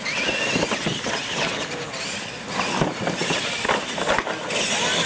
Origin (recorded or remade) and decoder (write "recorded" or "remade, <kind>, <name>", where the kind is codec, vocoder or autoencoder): recorded